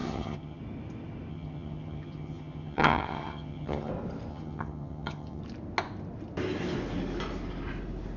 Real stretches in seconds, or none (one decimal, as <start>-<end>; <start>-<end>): 0.6-1.3; 3.9-4.3; 5.4-8.2